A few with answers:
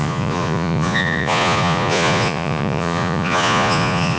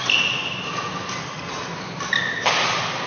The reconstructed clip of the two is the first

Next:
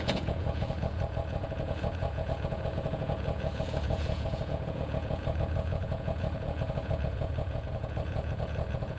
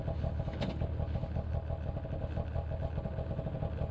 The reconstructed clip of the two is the first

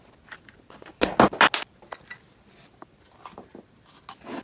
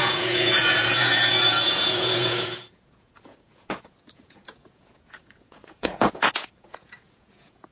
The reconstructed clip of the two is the second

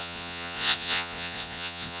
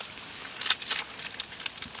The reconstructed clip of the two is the first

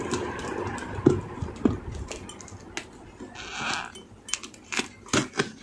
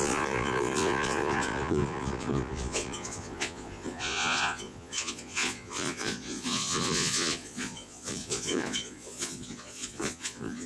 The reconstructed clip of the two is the second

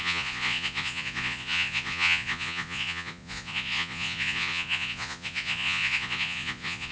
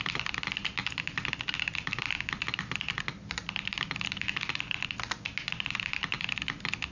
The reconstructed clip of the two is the first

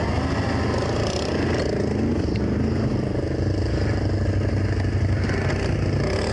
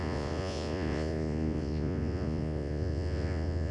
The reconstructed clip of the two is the second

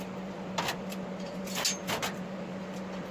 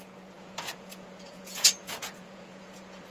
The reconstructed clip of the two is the second